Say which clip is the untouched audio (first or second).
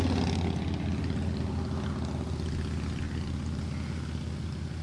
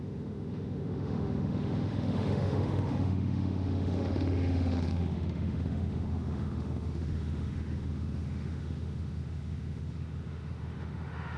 first